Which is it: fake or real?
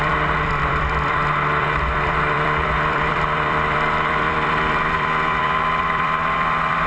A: fake